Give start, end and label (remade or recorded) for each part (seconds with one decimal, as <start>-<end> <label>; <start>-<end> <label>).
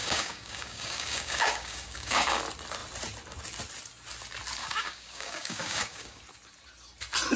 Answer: 0.0-2.4 remade; 2.4-4.6 recorded; 4.6-6.2 remade; 6.2-7.4 recorded